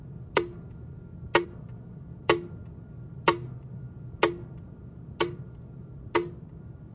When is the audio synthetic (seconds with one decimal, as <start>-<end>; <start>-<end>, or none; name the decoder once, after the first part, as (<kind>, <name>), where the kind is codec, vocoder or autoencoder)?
none